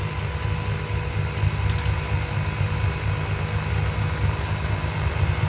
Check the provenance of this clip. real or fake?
real